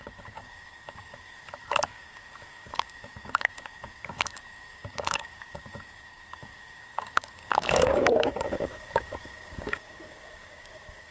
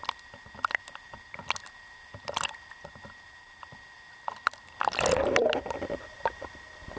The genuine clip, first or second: second